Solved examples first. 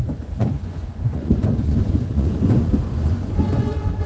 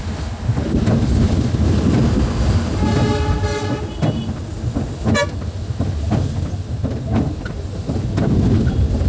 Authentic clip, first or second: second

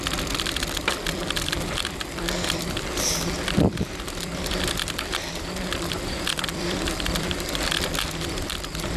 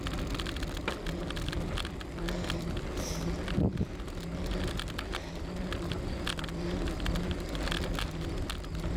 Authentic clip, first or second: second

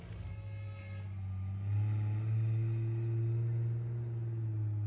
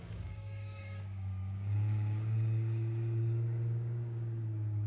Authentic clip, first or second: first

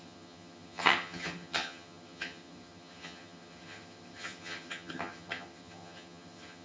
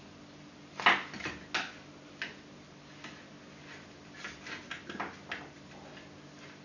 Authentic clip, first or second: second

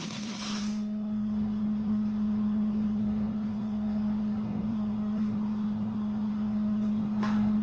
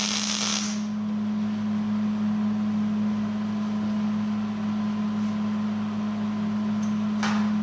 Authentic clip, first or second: second